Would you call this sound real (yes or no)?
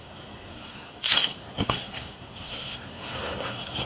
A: no